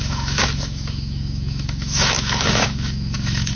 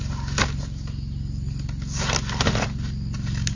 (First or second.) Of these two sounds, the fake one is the first